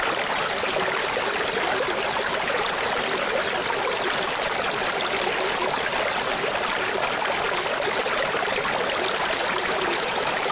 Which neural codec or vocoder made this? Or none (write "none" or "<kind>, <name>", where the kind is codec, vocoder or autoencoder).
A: none